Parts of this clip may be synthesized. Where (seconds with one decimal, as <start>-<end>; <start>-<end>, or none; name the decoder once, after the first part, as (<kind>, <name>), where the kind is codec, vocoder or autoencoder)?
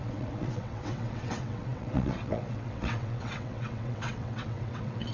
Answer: 0.0-5.1 (vocoder, WaveNeXt)